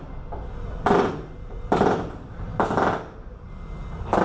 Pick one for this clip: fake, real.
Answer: real